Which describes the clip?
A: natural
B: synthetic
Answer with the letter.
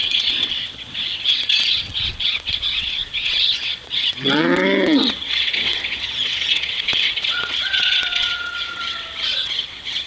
B